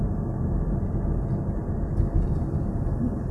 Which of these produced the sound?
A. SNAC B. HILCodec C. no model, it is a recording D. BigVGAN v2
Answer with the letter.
C